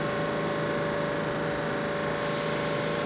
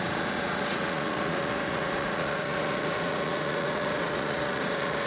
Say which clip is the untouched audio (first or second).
first